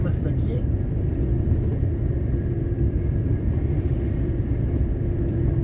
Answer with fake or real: fake